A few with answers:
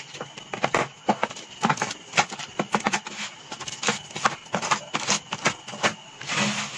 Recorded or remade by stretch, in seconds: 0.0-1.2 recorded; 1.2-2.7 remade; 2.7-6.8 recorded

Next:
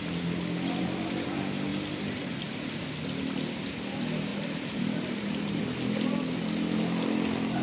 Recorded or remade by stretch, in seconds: 0.0-4.3 recorded; 4.3-5.6 remade; 5.6-7.6 recorded

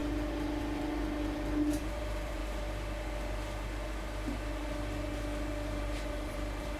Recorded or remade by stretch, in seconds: 0.0-2.4 remade; 2.4-5.8 recorded; 5.8-6.8 remade

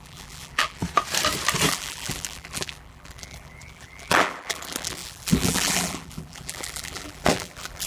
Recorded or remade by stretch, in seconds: 0.0-0.8 remade; 0.8-1.7 recorded; 1.7-7.9 remade

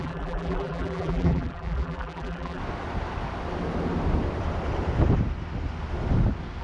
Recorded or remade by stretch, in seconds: 0.0-2.6 remade; 2.6-6.6 recorded

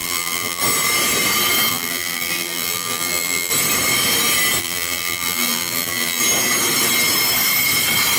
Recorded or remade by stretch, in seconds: 0.0-0.6 remade; 0.6-1.7 recorded; 1.7-3.5 remade; 3.5-4.6 recorded; 4.6-6.2 remade; 6.2-8.2 recorded

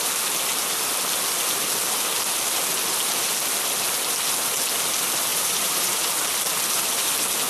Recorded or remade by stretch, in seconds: 0.0-5.3 recorded; 5.3-6.0 remade; 6.0-7.5 recorded